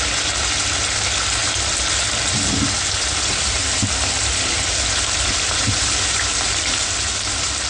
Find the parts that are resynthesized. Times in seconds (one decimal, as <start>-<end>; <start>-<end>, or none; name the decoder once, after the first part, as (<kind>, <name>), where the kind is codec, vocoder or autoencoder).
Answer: none